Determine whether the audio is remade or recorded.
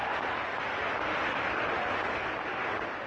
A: recorded